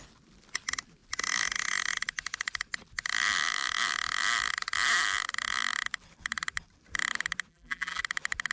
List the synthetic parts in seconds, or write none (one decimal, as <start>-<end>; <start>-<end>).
7.5-8.0